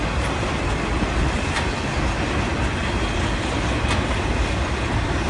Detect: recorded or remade recorded